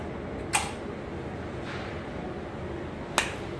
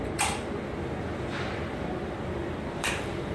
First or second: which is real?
first